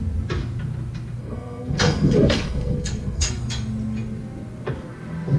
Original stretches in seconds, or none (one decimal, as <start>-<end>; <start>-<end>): 0.0-1.2; 3.4-5.4